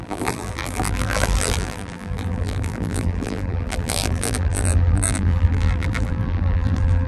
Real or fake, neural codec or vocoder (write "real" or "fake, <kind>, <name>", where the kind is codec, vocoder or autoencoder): fake, vocoder, BigVGAN v2